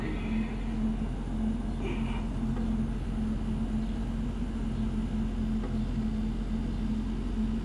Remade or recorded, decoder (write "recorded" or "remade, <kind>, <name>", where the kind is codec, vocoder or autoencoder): recorded